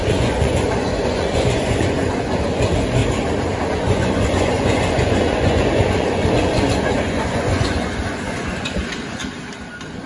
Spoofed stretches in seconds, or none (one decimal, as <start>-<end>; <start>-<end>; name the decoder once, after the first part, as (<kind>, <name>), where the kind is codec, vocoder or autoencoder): 0.0-3.0 (vocoder, Vocos); 3.7-9.2; 9.7-10.1